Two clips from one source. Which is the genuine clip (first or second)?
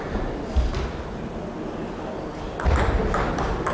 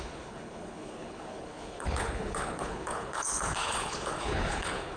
first